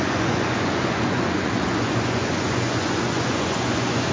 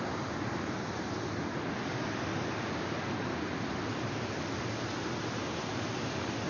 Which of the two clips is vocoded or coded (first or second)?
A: first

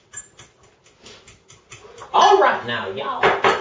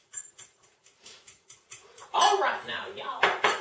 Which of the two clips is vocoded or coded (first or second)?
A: second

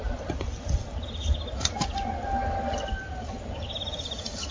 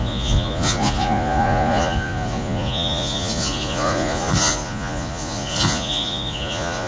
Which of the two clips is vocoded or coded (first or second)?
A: second